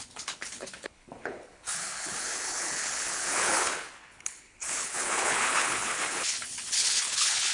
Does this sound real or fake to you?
fake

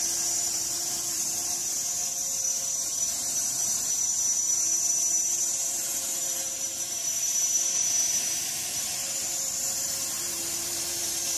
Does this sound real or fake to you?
fake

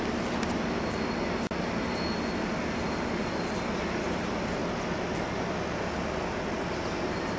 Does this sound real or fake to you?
real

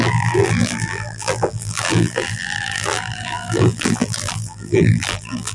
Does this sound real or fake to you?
fake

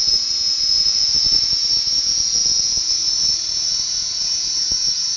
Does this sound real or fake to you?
fake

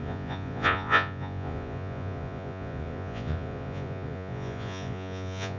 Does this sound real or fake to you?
fake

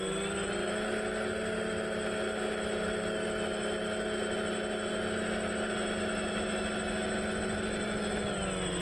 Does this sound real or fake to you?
real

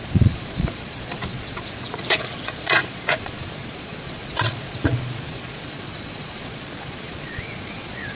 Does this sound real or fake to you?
fake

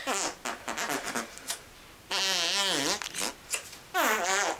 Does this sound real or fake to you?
real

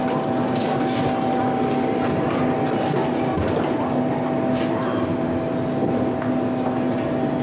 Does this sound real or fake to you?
real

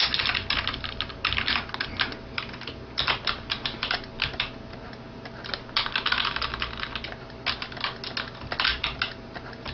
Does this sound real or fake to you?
real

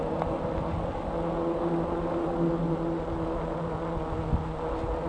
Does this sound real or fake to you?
real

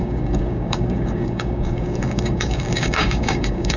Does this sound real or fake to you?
fake